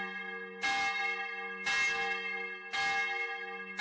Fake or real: real